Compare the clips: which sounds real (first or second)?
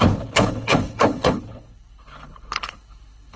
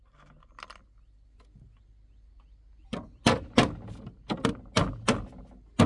second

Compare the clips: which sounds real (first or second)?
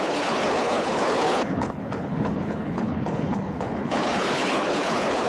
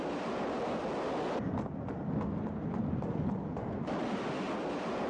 second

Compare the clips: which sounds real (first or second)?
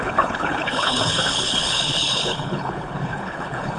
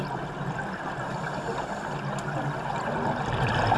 second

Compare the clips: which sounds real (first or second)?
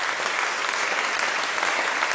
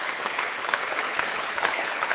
first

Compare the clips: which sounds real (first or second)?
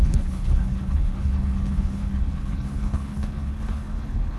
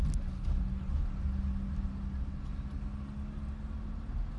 second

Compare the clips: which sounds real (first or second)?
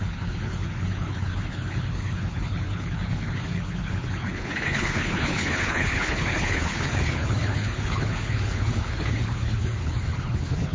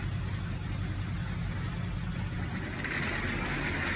second